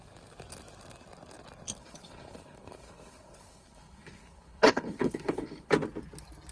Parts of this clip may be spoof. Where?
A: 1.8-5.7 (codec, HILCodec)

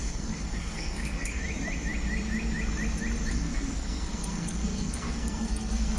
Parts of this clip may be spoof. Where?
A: 0.0-1.4 (codec, SNAC); 3.3-6.0

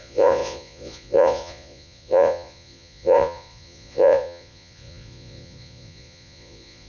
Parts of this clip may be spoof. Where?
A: 0.0-6.9 (vocoder, Vocos)

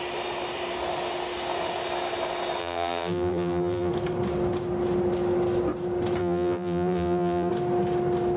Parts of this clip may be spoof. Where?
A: 2.6-3.9 (vocoder, BigVGAN v2); 6.2-7.5

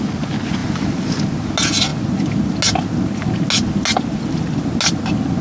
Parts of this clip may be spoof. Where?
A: 0.6-1.2 (vocoder, BigVGAN v2)

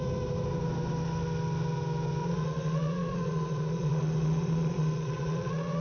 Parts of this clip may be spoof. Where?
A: 2.2-5.8 (vocoder, Vocos)

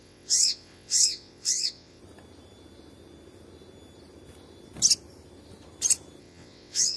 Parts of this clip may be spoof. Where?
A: 0.0-2.0 (vocoder, WaveNeXt); 6.2-7.0

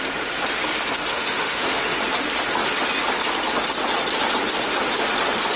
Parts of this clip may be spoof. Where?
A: 1.1-1.8 (autoencoder, DAC-VAE)